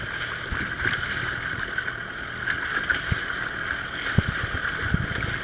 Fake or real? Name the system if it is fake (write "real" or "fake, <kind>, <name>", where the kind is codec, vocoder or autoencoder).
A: real